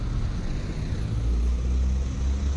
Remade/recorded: recorded